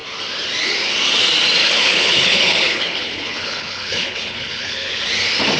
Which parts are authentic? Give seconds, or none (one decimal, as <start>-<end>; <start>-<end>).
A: 0.0-1.6; 5.0-5.6